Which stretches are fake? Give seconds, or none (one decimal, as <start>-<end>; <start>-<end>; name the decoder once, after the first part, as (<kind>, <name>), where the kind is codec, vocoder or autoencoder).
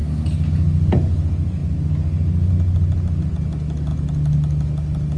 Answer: none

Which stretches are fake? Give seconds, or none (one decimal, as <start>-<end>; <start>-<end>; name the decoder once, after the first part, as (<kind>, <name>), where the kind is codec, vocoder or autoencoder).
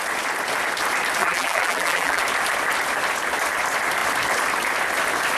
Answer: 1.2-2.2 (vocoder, BigVGAN v2)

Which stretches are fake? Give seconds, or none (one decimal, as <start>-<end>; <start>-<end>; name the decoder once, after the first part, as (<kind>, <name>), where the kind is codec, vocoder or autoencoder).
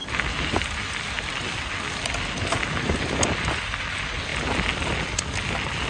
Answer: none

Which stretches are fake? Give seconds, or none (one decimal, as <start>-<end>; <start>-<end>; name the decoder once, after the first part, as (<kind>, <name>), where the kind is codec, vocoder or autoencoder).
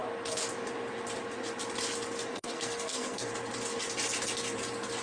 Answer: 2.3-3.3 (codec, SNAC)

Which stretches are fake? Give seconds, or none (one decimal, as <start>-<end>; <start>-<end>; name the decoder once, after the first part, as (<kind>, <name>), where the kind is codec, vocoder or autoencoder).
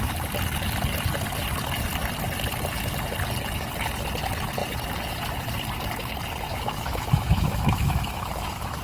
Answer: 6.5-8.8 (autoencoder, DAC-VAE)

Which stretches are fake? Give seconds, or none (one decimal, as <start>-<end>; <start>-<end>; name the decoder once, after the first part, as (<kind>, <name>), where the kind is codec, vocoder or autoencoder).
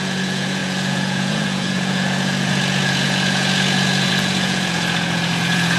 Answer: 0.0-5.8 (vocoder, Vocos)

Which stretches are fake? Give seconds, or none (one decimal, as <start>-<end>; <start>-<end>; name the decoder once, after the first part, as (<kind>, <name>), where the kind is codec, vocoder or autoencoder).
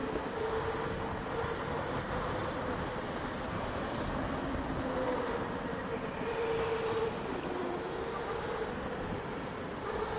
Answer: none